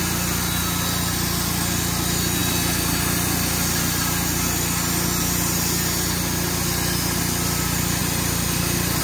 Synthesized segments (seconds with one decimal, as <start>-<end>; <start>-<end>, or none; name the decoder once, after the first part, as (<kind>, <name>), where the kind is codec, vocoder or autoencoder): 8.0-9.0 (vocoder, BigVGAN v2)